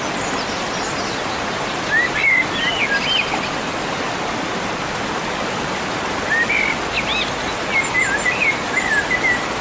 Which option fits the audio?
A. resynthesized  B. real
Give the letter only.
B